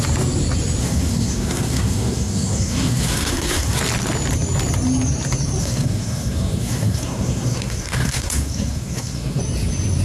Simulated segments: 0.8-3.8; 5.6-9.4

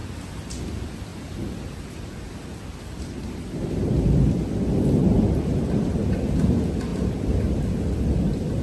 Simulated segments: none

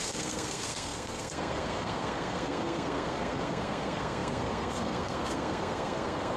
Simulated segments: 0.0-6.4

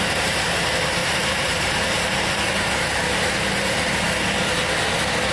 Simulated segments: 1.0-3.9

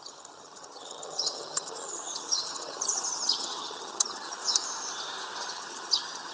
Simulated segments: 0.0-4.4; 5.4-6.3

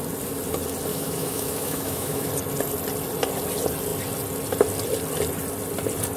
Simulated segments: 0.9-2.3

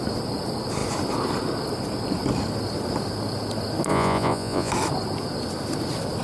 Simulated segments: 3.9-4.7

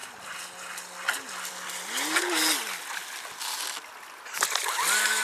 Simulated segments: none